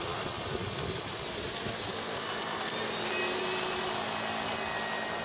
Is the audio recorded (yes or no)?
yes